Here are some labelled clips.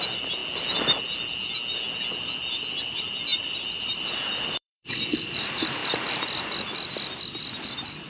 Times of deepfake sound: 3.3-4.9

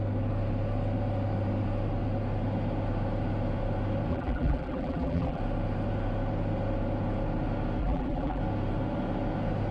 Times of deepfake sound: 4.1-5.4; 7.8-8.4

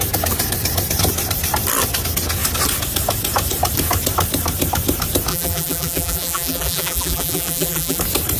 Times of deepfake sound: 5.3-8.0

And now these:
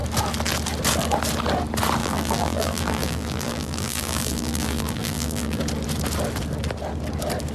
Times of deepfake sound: 2.0-5.6